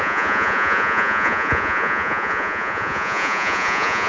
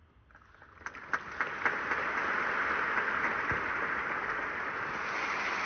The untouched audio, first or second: second